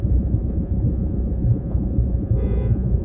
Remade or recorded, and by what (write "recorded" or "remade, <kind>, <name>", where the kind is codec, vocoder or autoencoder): remade, vocoder, Vocos